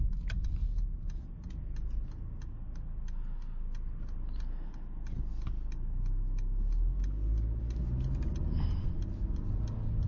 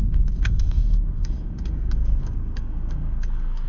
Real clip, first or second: first